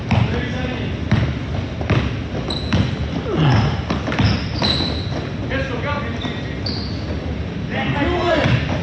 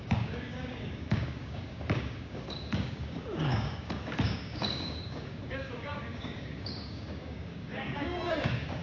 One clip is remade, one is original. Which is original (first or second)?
first